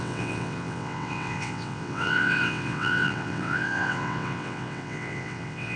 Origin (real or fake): fake